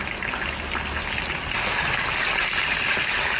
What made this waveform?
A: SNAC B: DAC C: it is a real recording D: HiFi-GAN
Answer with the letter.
C